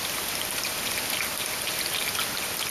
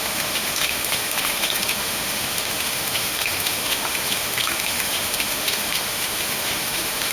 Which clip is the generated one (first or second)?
second